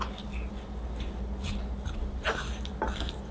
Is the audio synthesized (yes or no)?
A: no